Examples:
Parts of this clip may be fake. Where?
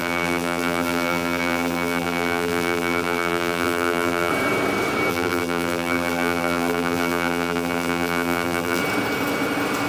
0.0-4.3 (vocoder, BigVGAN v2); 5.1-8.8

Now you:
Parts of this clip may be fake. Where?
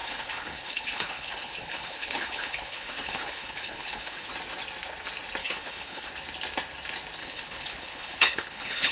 0.0-4.3 (codec, HILCodec); 5.4-6.1; 7.2-8.9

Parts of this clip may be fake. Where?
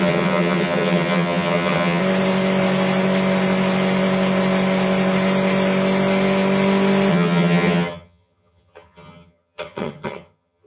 0.0-2.0 (vocoder, HiFi-GAN); 7.1-10.7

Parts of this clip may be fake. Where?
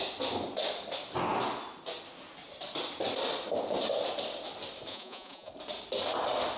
4.9-5.5 (vocoder, Vocos)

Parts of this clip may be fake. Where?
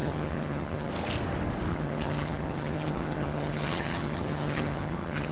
0.0-0.9 (vocoder, HiFi-GAN); 1.7-5.3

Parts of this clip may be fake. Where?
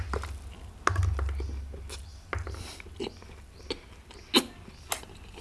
none